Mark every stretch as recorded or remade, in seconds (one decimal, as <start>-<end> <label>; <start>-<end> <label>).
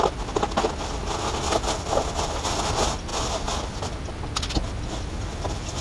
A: 0.0-5.8 recorded